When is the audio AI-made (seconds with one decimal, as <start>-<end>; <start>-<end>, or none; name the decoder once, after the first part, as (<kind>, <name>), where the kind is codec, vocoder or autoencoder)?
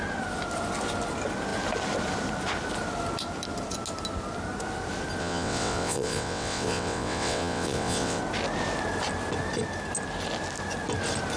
5.2-8.2 (vocoder, WaveNeXt)